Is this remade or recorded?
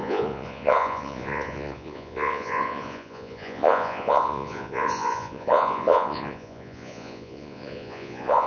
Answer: remade